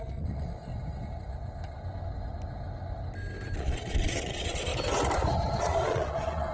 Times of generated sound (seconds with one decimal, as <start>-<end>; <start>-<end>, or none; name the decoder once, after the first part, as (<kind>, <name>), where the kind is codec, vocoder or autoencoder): 0.0-0.7 (vocoder, Vocos); 3.6-4.7; 5.6-6.5